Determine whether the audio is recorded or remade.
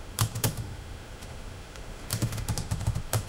remade